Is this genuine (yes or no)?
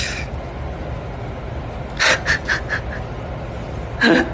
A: yes